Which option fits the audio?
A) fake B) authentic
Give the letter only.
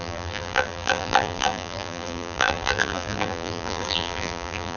A